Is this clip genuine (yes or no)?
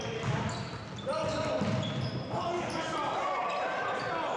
yes